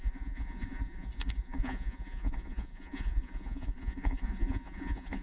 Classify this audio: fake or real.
fake